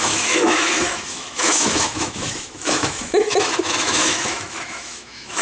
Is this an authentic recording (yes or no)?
no